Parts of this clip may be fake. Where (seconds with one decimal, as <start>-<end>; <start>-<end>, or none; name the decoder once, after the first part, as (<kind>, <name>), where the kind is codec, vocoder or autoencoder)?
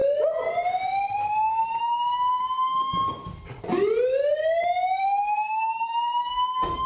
1.8-3.2 (codec, DAC); 5.0-6.9